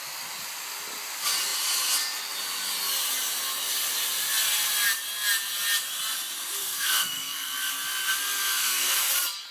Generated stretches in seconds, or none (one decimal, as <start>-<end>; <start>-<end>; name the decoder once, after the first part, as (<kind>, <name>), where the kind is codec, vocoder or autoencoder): 6.6-7.7 (codec, SNAC); 8.4-9.1